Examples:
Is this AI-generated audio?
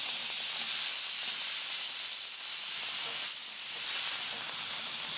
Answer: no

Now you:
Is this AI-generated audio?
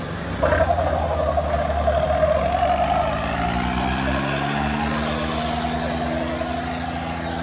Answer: no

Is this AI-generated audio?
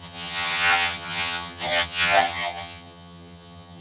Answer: yes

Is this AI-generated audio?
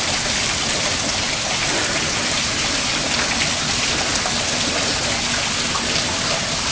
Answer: no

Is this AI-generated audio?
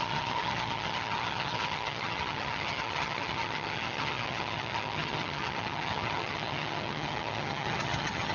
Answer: yes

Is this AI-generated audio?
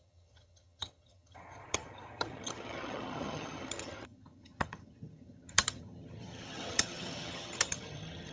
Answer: yes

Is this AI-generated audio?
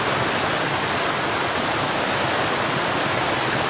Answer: no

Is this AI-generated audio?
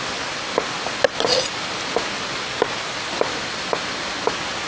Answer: no